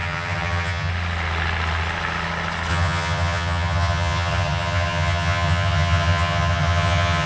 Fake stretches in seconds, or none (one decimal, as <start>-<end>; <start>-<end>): 0.0-0.9; 2.7-7.3